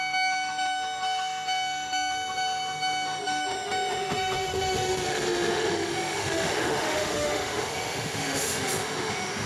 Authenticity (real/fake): fake